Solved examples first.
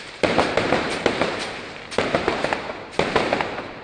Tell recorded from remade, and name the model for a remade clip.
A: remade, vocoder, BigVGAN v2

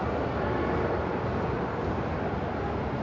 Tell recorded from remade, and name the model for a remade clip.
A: remade, vocoder, BigVGAN v2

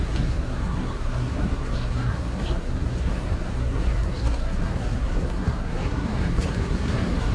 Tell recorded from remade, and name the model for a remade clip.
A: remade, codec, SNAC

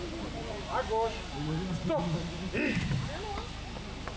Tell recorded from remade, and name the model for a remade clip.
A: recorded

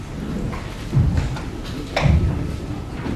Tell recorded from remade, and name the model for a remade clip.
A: recorded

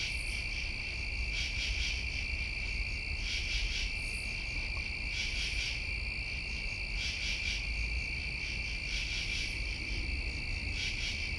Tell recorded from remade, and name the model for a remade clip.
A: recorded